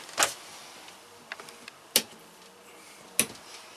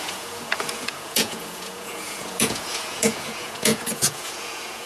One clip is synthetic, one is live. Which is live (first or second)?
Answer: first